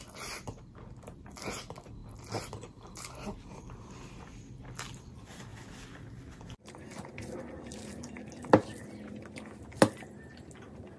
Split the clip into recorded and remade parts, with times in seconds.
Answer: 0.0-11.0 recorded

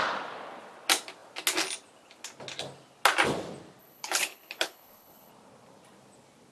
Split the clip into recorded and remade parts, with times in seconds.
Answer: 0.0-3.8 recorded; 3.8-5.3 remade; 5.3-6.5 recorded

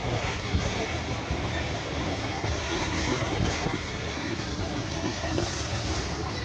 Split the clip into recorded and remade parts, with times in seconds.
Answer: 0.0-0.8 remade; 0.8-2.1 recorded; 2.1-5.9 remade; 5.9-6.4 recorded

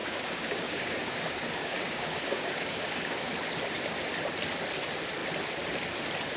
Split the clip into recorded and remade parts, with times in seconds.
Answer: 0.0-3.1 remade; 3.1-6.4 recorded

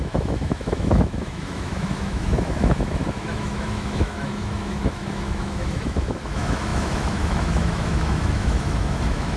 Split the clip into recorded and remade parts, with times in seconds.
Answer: 0.0-9.4 remade

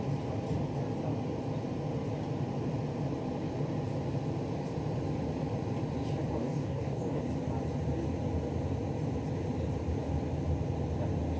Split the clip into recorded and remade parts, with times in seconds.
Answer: 0.0-6.4 recorded; 6.4-7.2 remade; 7.2-11.4 recorded

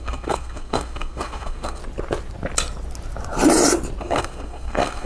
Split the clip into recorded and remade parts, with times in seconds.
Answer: 0.0-1.8 remade; 1.8-4.0 recorded; 4.0-5.1 remade

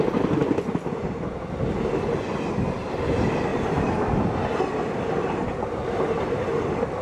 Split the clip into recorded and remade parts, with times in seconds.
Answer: 0.0-3.5 recorded; 3.5-4.6 remade; 4.6-7.0 recorded